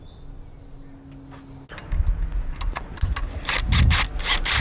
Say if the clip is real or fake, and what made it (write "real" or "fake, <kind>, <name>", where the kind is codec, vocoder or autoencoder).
real